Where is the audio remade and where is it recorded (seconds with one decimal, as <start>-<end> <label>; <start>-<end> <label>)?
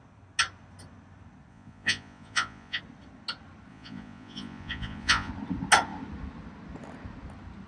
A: 0.0-1.5 recorded; 1.5-2.8 remade; 2.8-3.7 recorded; 3.7-5.3 remade; 5.3-7.7 recorded